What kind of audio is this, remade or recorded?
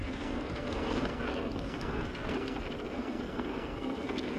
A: remade